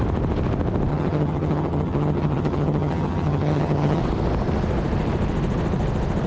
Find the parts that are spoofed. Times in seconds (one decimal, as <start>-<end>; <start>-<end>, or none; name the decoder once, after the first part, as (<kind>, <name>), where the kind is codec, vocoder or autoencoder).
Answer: 0.9-4.0 (vocoder, HiFi-GAN)